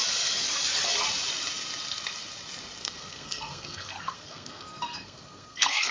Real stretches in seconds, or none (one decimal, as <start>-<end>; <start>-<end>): 0.0-2.8